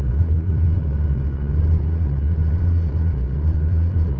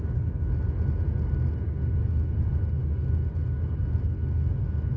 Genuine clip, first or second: second